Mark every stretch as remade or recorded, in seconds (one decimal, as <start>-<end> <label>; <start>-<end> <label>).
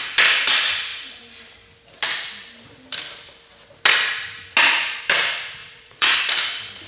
0.0-5.6 recorded; 5.6-6.2 remade; 6.2-6.9 recorded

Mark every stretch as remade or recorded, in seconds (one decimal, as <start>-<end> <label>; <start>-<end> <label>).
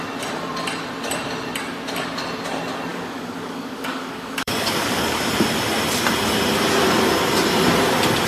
0.0-2.9 recorded; 2.9-5.2 remade; 5.2-8.3 recorded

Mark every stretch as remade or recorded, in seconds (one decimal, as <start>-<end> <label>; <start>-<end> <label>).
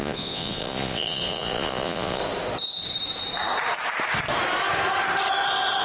0.0-2.2 remade; 2.2-5.8 recorded